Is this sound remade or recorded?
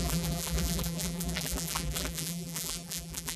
remade